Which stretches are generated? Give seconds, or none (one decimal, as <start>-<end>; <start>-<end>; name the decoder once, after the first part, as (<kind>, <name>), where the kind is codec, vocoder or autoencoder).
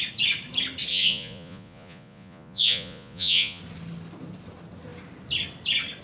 0.9-3.6 (vocoder, Vocos)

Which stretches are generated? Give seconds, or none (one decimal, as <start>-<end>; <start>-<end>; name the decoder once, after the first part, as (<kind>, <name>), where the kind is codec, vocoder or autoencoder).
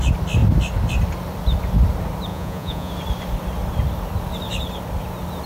2.3-2.9 (vocoder, Vocos)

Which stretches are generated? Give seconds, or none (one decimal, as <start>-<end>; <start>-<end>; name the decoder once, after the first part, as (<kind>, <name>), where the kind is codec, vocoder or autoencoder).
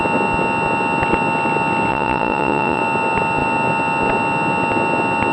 1.9-2.8 (vocoder, Vocos)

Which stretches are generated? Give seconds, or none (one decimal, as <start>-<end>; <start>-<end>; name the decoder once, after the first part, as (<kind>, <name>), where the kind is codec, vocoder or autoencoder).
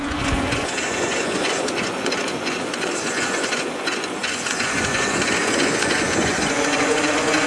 0.0-7.5 (vocoder, Vocos)